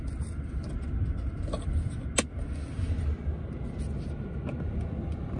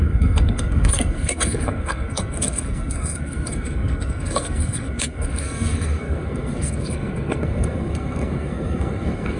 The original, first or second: first